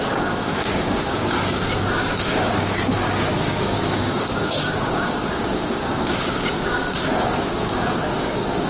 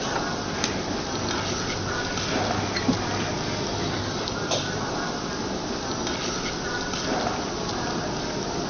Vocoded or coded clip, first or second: first